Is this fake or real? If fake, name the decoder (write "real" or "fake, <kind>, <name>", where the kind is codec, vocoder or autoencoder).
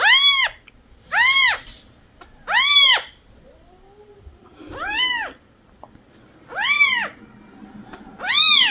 real